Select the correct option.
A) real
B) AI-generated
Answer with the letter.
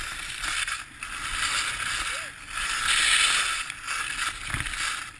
A